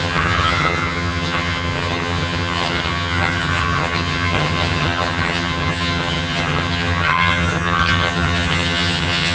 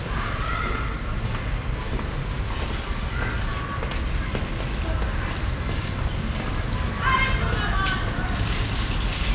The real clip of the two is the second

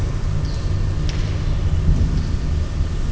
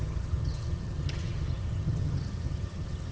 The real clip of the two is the first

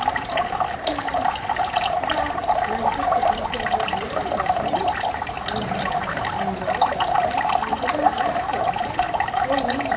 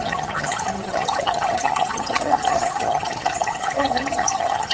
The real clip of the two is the first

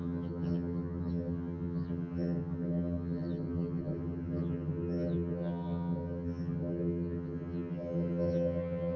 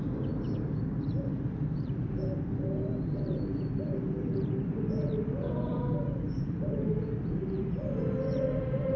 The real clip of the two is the second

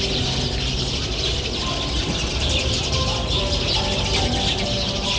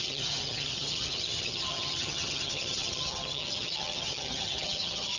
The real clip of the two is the first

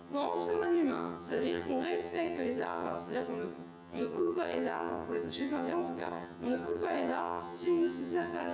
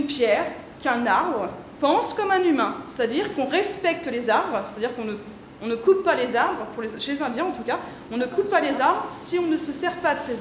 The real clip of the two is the second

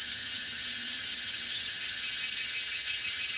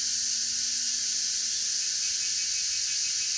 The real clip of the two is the second